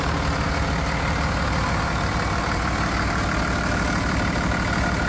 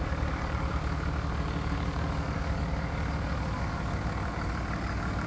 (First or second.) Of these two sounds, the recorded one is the first